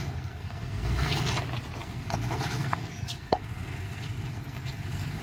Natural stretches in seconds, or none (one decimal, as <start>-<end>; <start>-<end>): 1.3-1.8